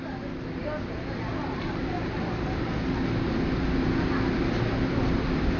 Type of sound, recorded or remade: recorded